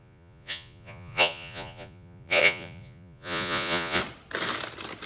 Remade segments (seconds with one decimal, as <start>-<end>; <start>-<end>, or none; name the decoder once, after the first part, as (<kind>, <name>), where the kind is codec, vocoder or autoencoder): 0.0-4.0 (vocoder, Vocos)